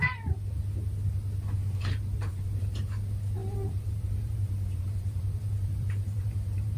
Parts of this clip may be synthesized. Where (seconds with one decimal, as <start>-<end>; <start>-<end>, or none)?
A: 1.6-2.6; 3.4-6.8